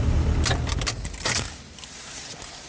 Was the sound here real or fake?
real